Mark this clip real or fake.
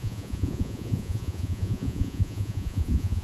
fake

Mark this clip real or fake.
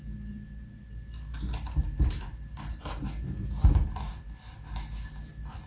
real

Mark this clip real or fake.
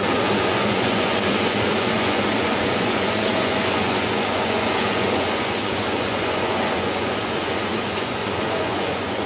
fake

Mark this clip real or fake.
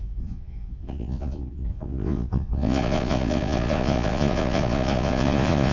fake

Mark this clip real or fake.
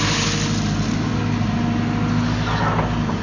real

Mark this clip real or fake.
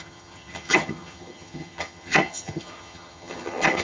fake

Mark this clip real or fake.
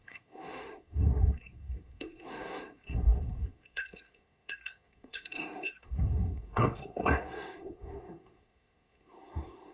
fake